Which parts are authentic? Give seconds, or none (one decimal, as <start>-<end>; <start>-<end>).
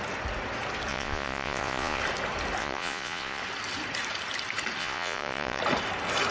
0.0-0.9; 2.0-2.6; 3.4-4.8; 5.6-6.3